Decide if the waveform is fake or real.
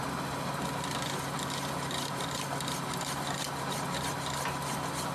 real